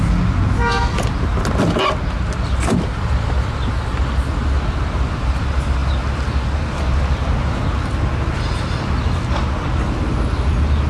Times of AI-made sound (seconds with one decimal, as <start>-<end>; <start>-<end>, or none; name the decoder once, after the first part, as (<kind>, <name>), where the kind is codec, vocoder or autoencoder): none